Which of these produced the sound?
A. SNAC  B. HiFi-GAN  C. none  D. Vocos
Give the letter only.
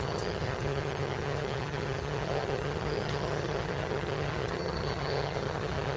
B